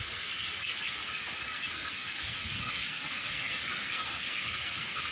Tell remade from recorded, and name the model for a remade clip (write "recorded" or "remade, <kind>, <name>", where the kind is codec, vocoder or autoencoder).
remade, codec, SNAC